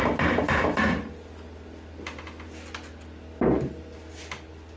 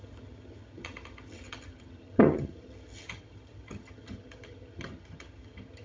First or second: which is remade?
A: second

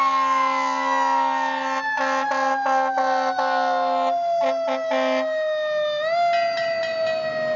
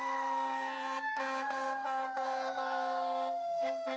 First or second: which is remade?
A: second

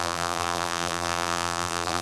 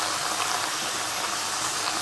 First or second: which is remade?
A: first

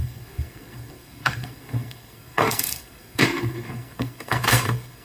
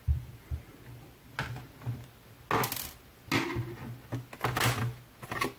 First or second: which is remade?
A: first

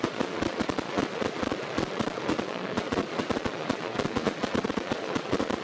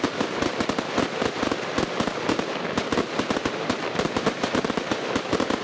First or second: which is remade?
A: first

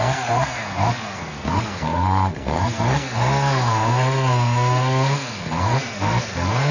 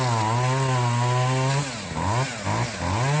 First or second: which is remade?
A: first